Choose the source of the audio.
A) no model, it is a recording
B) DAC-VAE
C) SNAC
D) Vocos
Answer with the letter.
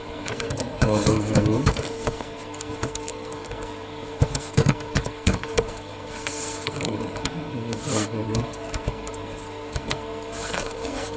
C